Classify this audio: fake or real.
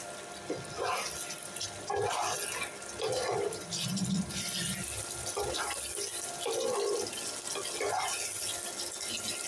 real